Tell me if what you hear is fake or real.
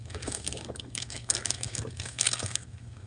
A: fake